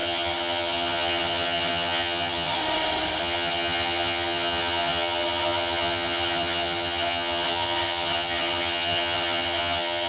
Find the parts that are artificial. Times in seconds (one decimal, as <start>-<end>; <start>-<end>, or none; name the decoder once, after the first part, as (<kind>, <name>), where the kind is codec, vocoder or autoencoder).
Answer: 0.0-2.6 (vocoder, HiFi-GAN); 3.2-10.1